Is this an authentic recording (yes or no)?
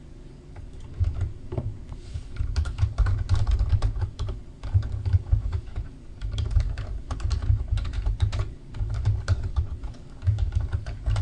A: no